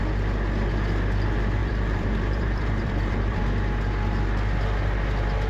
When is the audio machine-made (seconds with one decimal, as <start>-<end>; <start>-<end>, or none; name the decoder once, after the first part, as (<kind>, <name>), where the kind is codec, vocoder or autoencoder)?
1.6-3.4 (vocoder, BigVGAN v2)

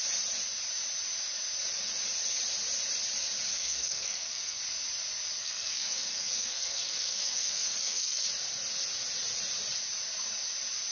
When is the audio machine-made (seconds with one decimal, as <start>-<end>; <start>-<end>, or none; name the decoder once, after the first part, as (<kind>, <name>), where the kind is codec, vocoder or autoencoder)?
3.5-4.6 (codec, SNAC); 5.4-8.3

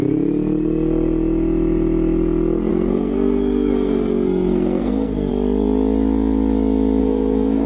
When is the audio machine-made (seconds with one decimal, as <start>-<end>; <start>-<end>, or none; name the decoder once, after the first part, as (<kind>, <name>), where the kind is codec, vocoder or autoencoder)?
2.7-5.3 (codec, SNAC); 7.0-7.7

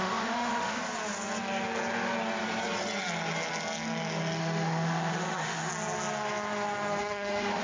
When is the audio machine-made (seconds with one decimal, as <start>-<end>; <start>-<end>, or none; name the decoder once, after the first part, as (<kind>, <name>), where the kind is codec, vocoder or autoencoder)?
0.0-0.8 (autoencoder, DAC-VAE); 4.4-5.7; 7.0-7.6

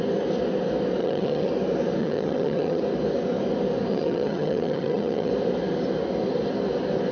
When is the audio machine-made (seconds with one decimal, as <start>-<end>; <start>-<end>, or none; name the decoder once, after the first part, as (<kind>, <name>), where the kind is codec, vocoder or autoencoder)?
1.0-1.5 (vocoder, HiFi-GAN); 2.0-2.8; 3.9-5.3

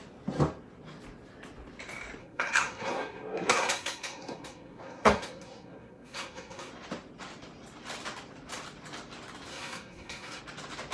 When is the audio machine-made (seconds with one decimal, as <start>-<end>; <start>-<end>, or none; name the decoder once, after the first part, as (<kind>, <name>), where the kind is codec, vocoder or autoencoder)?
2.2-6.7 (codec, SNAC); 9.5-10.4